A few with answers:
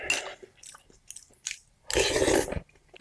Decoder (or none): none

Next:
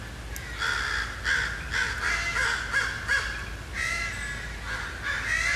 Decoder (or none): none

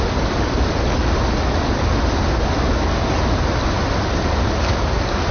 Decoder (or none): none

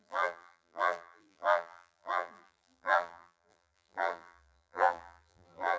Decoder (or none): vocoder, BigVGAN v2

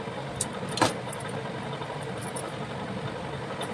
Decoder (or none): none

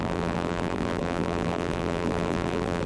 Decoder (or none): vocoder, BigVGAN v2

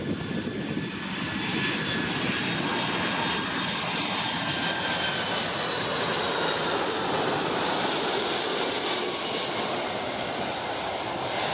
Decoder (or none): none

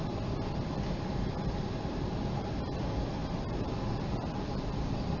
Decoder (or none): vocoder, BigVGAN v2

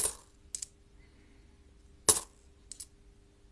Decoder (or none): none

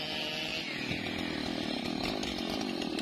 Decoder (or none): none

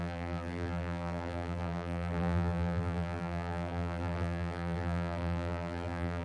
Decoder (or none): vocoder, BigVGAN v2